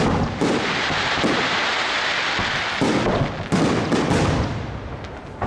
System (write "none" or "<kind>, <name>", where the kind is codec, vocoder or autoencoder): none